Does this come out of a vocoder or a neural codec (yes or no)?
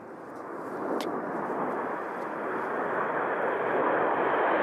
no